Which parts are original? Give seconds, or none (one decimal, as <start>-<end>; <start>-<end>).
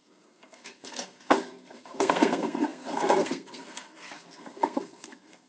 none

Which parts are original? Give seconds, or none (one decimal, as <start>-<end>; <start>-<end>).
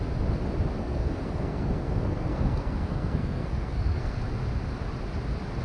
0.0-0.8; 4.2-5.6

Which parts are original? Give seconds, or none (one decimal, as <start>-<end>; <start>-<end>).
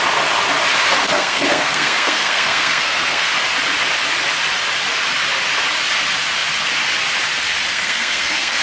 0.0-1.0; 3.3-7.7